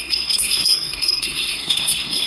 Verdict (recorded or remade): remade